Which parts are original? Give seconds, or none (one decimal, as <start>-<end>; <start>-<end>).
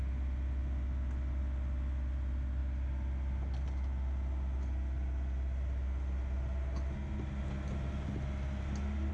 0.0-9.1